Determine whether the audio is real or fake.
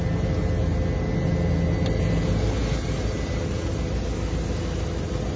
real